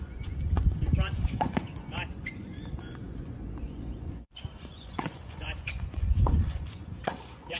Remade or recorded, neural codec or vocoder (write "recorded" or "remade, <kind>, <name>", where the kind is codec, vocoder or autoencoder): remade, vocoder, Vocos